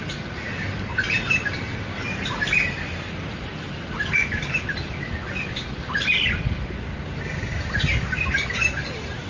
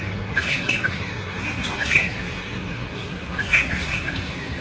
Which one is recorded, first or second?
first